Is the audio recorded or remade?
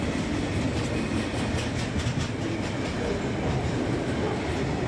recorded